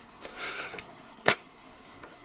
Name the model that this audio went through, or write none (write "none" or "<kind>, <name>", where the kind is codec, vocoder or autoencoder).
codec, SNAC